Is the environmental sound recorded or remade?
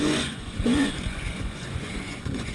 remade